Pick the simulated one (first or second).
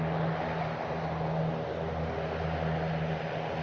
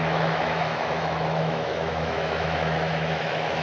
second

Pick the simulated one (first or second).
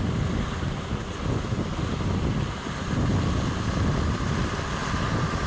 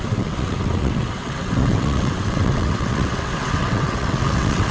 second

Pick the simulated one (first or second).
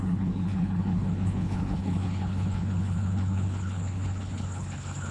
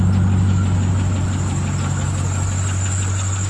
first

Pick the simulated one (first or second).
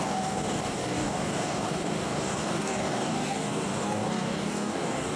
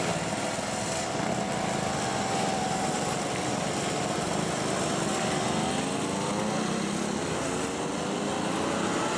first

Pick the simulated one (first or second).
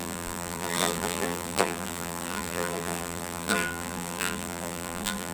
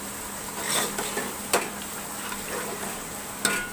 first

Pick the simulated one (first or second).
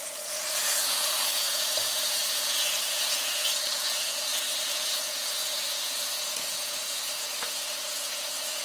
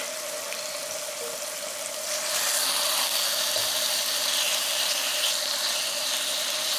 first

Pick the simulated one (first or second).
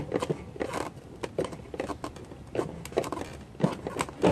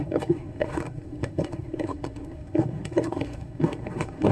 second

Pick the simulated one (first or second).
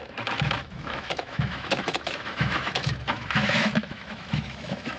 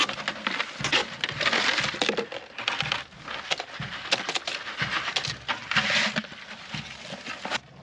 first